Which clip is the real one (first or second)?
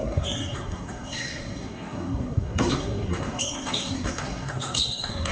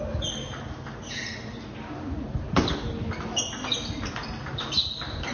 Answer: second